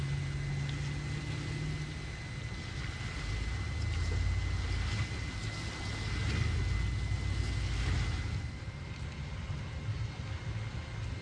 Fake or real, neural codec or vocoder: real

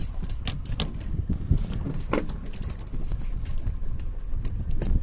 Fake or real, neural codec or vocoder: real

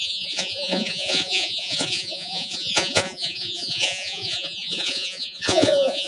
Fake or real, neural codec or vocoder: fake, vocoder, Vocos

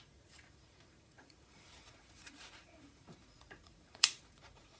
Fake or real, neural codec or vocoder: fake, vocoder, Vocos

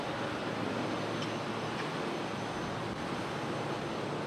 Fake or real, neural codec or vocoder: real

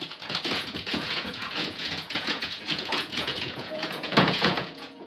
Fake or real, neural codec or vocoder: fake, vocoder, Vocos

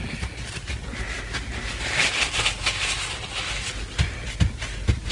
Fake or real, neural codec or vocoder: real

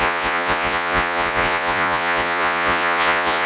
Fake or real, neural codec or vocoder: fake, vocoder, Vocos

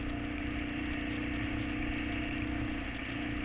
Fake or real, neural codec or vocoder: real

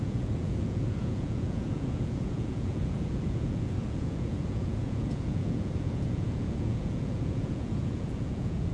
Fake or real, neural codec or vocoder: fake, vocoder, Vocos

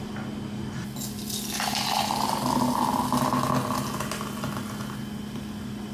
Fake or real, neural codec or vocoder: real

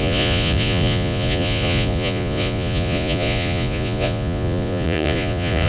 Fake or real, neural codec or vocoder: fake, vocoder, Vocos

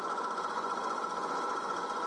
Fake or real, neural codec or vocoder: fake, vocoder, Vocos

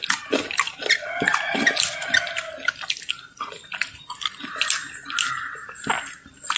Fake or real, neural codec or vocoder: real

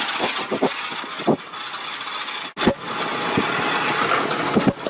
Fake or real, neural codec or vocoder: real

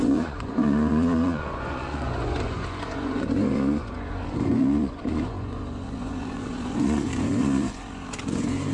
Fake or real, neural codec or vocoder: fake, vocoder, Vocos